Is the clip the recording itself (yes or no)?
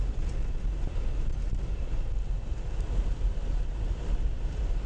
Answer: yes